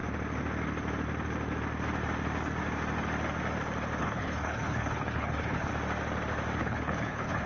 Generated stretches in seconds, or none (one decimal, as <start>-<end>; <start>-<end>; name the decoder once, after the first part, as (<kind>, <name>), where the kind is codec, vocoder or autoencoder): 4.0-5.7 (codec, HILCodec); 6.6-7.5